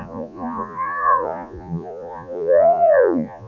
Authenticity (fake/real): fake